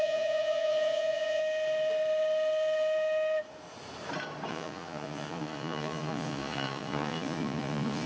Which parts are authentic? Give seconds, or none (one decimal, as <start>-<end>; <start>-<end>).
1.4-4.5